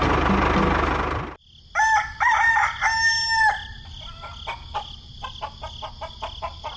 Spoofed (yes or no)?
no